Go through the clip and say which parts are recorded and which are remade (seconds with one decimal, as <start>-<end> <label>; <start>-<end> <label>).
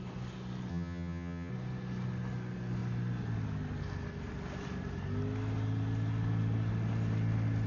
0.0-0.7 recorded; 0.7-1.5 remade; 1.5-7.7 recorded